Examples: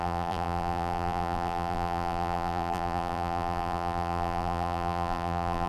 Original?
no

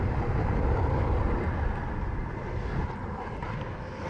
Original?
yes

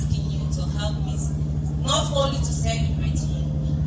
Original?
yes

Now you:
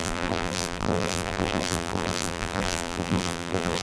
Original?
no